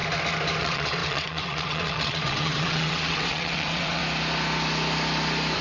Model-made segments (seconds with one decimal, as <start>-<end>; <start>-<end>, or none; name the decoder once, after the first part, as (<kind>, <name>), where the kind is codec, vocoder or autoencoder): 0.6-4.0 (vocoder, WaveNeXt)